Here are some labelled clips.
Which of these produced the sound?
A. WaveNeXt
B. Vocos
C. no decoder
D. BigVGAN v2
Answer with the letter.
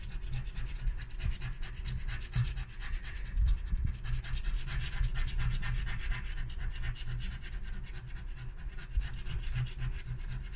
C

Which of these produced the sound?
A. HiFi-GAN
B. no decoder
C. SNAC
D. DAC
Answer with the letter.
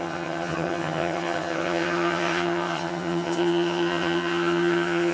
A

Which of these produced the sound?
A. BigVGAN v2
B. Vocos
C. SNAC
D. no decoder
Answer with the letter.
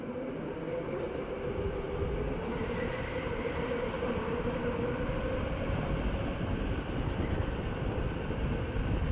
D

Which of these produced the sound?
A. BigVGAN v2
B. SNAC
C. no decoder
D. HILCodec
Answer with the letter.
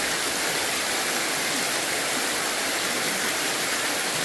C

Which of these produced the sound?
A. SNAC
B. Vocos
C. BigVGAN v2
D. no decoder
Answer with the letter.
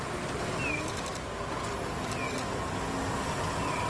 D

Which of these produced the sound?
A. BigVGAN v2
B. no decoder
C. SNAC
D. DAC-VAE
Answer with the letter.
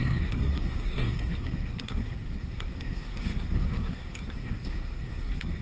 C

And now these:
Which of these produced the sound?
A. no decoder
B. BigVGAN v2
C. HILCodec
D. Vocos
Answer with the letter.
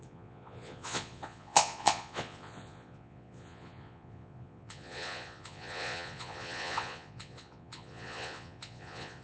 D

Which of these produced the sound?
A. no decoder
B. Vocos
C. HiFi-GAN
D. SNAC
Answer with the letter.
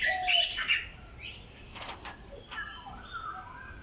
A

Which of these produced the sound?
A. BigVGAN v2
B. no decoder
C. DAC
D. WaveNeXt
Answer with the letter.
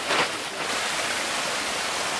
B